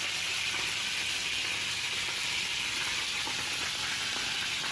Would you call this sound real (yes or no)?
yes